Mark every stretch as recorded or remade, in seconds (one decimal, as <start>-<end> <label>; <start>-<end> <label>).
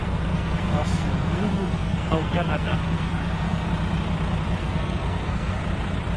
0.0-3.7 remade; 3.7-4.6 recorded; 4.6-5.6 remade; 5.6-6.2 recorded